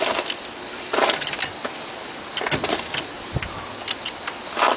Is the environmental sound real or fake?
real